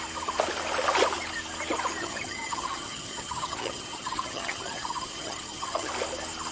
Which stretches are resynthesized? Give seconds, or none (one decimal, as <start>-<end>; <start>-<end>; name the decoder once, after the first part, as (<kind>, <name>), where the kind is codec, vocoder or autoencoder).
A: 2.0-5.9 (vocoder, HiFi-GAN)